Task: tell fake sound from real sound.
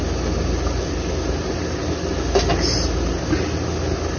real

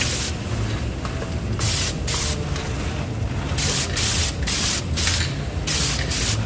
real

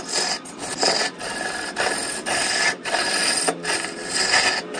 real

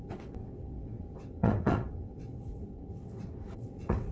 fake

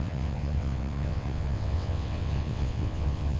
fake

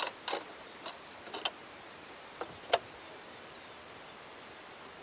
real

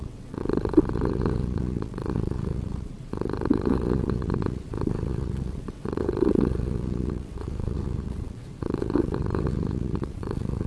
fake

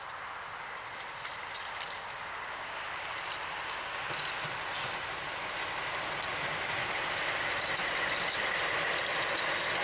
real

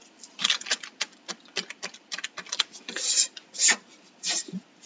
real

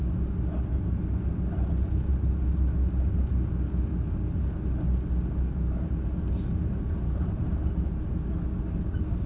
real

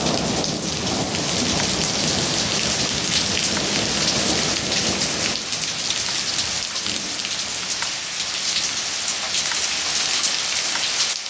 real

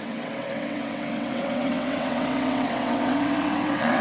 fake